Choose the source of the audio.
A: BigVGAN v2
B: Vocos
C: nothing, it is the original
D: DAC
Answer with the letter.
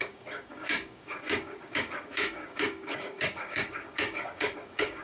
D